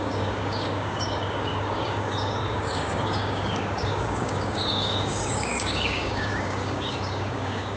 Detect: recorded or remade remade